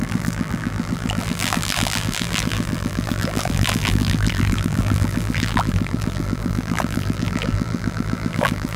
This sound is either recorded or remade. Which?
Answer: remade